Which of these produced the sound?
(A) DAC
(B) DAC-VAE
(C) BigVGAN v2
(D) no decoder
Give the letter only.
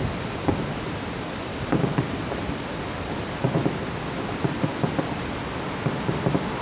D